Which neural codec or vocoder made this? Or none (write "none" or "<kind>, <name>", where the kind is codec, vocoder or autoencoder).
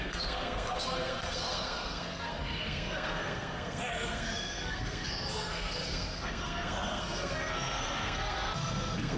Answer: codec, SNAC